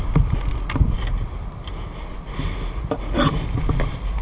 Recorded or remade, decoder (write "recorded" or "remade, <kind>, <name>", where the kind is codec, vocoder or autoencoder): recorded